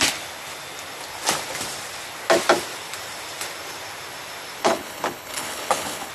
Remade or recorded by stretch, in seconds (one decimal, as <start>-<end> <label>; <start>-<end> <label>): 0.0-4.6 recorded; 4.6-6.1 remade